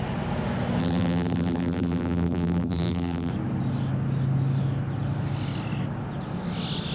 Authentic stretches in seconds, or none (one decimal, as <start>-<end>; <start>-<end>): 0.0-0.8; 3.3-6.9